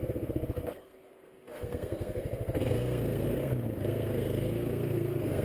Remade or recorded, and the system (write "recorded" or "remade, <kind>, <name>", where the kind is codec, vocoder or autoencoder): remade, codec, SNAC